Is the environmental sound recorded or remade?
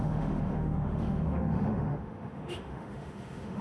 remade